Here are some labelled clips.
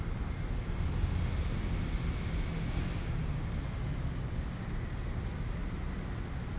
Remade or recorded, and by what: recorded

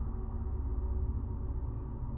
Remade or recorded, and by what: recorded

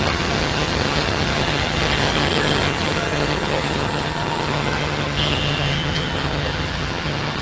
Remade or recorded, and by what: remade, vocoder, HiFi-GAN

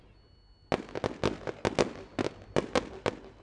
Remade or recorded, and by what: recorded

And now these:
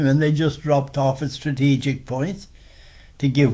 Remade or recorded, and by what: remade, autoencoder, DAC-VAE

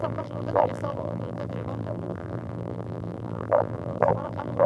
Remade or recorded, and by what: remade, vocoder, BigVGAN v2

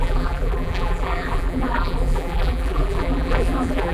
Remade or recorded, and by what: remade, vocoder, BigVGAN v2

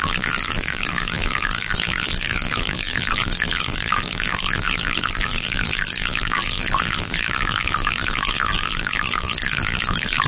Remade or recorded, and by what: remade, vocoder, BigVGAN v2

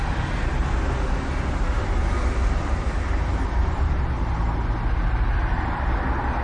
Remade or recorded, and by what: recorded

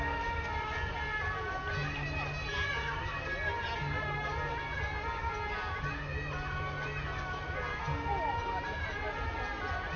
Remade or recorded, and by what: recorded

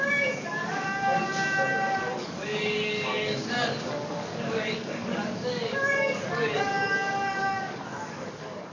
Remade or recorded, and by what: remade, codec, DAC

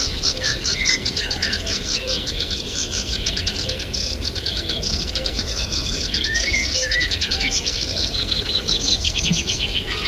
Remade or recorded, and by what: remade, codec, SNAC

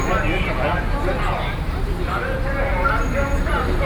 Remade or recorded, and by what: recorded